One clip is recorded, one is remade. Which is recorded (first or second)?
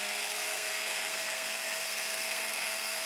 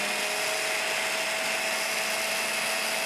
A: second